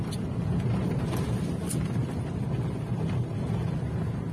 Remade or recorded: recorded